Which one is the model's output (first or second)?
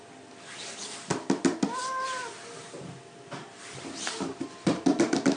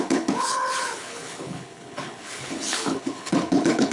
second